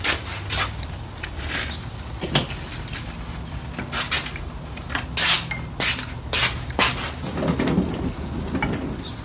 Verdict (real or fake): real